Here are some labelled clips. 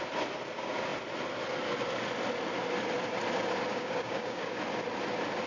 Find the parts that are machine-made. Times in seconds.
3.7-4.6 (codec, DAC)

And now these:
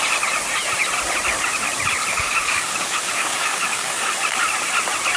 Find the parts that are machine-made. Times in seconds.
2.1-4.1 (codec, DAC)

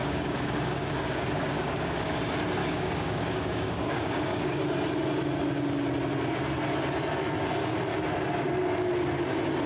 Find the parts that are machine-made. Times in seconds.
0.0-2.2 (codec, DAC); 2.6-4.6

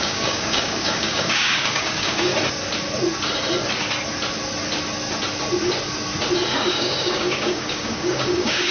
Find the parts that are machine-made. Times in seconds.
0.0-2.3 (codec, DAC); 6.5-8.7